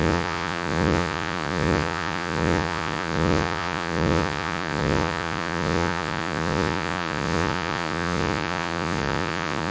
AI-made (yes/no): yes